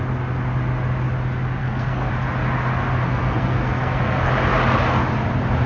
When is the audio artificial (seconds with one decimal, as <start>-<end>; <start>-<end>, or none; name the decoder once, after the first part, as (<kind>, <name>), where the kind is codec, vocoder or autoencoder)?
1.6-2.1 (codec, SNAC); 3.0-4.3